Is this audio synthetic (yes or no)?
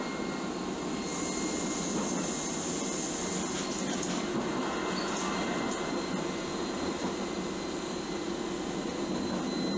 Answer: no